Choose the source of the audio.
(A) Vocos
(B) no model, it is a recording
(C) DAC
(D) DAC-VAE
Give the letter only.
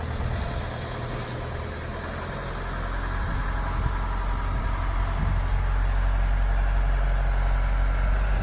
B